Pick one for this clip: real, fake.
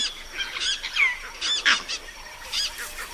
real